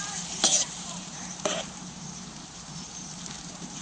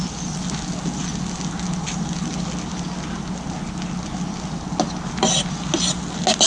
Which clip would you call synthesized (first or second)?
first